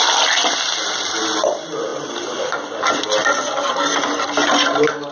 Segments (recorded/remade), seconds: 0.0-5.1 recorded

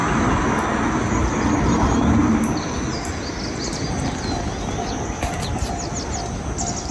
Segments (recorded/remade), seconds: 0.0-6.9 recorded

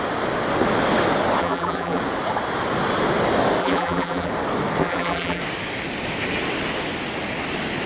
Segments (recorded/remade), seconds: 0.0-1.4 recorded; 1.4-2.0 remade; 2.0-3.6 recorded; 3.6-4.3 remade; 4.3-4.8 recorded; 4.8-5.4 remade; 5.4-7.9 recorded

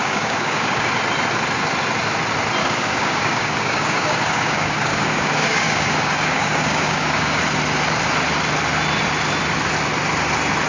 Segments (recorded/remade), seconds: 0.0-1.0 remade; 1.0-2.6 recorded; 2.6-7.4 remade; 7.4-10.7 recorded

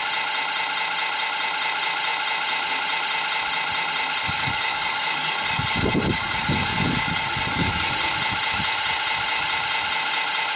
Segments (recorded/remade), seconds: 0.0-4.2 recorded; 4.2-7.9 remade; 7.9-10.6 recorded